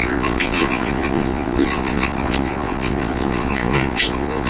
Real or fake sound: fake